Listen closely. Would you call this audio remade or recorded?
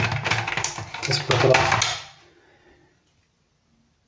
recorded